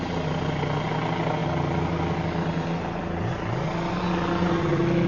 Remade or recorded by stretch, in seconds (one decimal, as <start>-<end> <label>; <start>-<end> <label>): 0.0-5.1 recorded